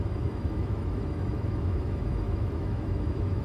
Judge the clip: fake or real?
fake